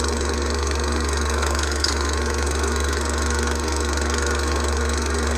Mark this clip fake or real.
fake